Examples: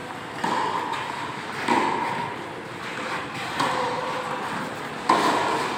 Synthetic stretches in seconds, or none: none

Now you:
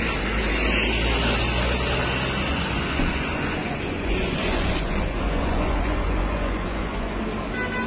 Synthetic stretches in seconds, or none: 2.5-7.2 (vocoder, Vocos)